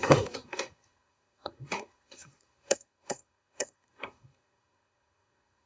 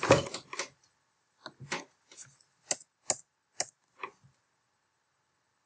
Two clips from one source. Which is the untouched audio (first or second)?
second